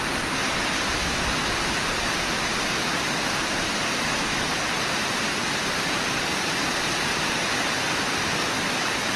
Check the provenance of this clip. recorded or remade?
recorded